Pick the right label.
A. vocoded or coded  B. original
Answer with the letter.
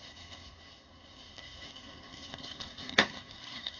A